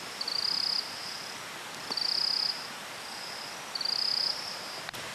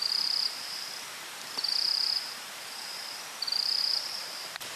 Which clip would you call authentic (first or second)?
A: first